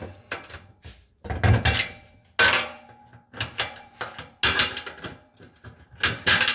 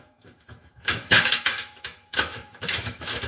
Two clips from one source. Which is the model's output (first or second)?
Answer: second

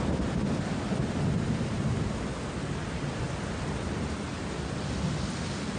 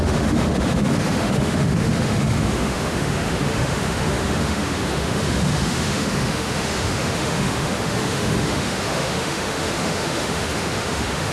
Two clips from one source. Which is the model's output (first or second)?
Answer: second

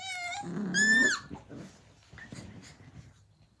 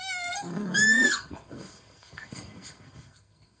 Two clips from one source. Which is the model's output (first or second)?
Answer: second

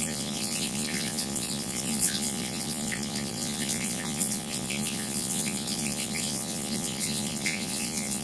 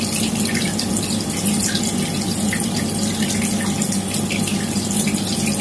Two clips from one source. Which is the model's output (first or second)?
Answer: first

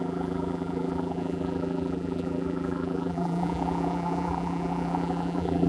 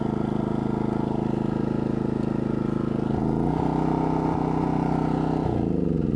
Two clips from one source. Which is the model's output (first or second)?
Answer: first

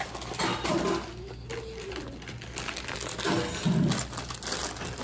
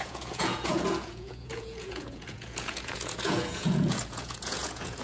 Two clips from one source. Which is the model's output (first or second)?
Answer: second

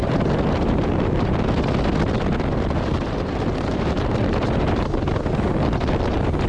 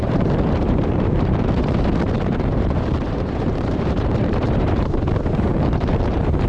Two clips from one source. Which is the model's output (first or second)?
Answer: second